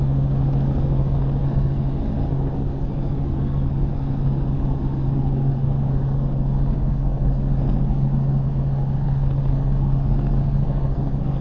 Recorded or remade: remade